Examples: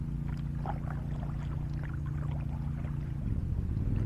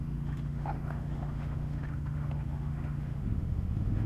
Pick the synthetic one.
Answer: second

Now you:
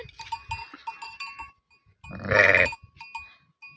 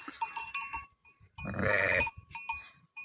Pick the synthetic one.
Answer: second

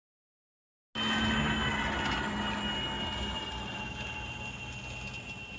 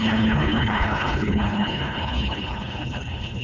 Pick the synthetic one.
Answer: second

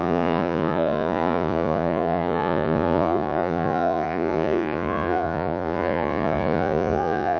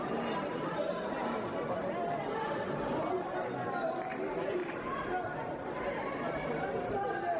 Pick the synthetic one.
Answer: first